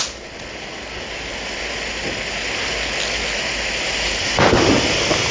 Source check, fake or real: real